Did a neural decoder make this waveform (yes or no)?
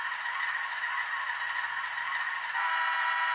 no